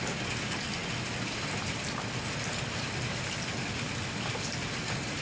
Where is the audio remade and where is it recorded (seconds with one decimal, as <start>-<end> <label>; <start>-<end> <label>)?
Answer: 0.0-5.2 recorded